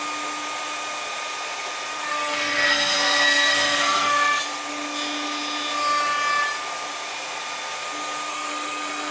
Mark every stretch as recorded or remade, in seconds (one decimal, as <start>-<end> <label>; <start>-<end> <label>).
0.0-2.1 recorded; 2.1-4.4 remade; 4.4-8.3 recorded; 8.3-9.1 remade